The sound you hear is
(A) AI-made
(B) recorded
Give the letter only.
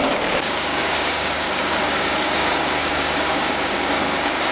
A